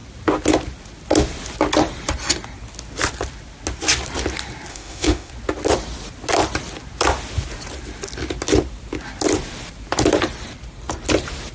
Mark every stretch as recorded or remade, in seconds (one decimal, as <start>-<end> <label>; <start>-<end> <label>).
0.0-4.7 recorded; 4.7-5.3 remade; 5.3-11.5 recorded